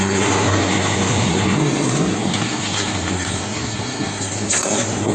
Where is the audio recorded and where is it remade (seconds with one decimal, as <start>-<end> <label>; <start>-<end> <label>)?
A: 0.0-5.1 remade